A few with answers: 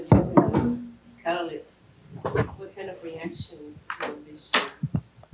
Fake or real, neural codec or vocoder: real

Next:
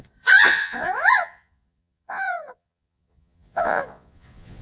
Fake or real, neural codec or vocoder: fake, vocoder, Vocos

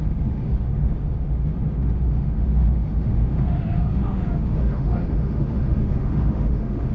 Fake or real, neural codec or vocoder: fake, autoencoder, DAC-VAE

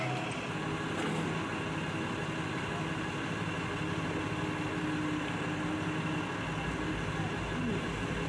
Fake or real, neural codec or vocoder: real